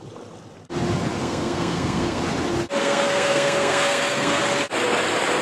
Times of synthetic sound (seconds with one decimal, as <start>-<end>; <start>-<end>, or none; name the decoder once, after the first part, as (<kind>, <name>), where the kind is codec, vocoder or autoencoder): 1.2-2.2 (codec, SNAC); 2.8-4.4